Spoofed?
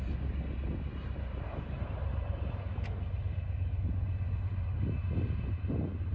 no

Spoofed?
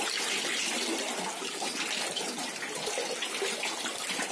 no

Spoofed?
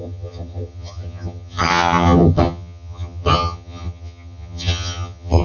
yes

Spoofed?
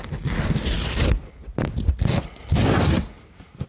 no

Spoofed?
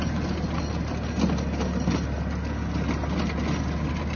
no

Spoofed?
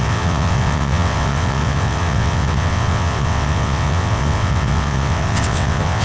yes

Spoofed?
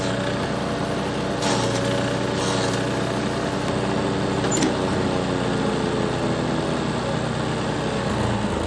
no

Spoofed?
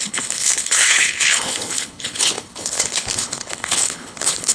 yes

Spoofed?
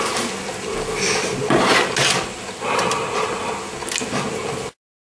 no